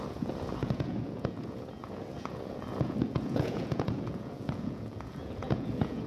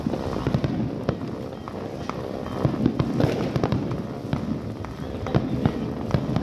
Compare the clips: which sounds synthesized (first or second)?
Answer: first